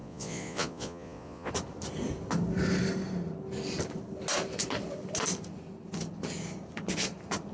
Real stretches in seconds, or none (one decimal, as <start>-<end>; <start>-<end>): 1.5-7.5